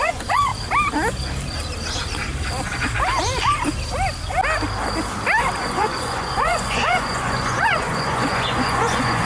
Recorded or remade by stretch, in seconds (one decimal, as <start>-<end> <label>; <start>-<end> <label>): 0.0-0.5 remade; 0.5-5.6 recorded; 5.6-9.3 remade